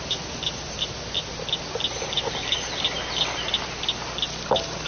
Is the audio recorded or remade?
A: recorded